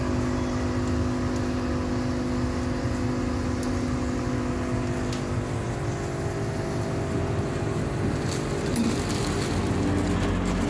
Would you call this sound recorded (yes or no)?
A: yes